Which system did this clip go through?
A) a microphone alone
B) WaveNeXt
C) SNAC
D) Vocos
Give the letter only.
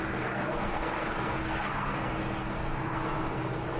C